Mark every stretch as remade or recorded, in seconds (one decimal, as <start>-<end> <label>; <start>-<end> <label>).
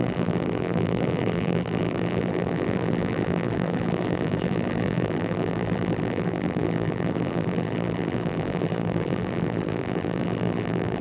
0.0-11.0 remade